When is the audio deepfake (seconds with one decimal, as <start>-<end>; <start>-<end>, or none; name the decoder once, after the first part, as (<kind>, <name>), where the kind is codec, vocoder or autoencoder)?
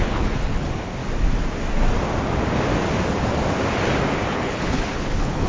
0.0-1.0 (codec, HILCodec); 4.3-5.5